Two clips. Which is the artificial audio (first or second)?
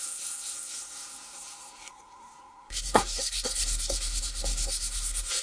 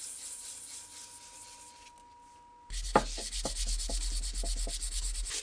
first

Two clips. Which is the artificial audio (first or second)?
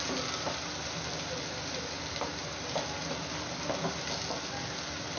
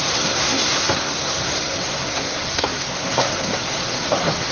second